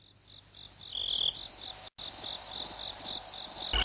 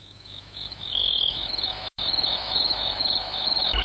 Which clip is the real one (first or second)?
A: first